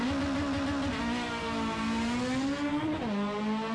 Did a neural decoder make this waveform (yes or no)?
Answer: no